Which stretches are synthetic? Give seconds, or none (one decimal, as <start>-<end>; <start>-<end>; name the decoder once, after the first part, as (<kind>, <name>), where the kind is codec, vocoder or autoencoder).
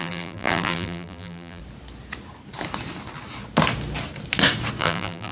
0.0-1.6 (vocoder, BigVGAN v2); 4.8-5.3